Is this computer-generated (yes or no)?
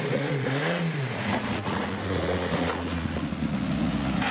yes